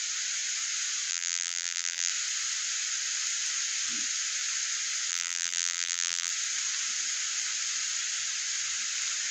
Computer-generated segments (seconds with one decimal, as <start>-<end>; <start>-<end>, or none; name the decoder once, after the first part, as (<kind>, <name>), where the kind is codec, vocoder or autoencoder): 1.1-2.1 (vocoder, BigVGAN v2); 5.1-6.3